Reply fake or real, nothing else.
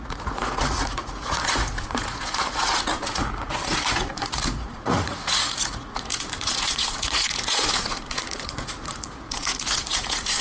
fake